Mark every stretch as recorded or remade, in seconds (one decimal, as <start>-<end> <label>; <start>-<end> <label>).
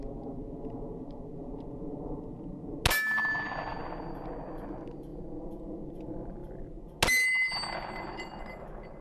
0.0-3.7 recorded; 3.7-4.3 remade; 4.3-9.0 recorded